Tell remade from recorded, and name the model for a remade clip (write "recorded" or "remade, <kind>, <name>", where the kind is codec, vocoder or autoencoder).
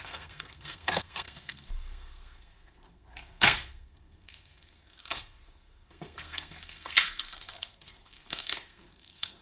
remade, codec, SNAC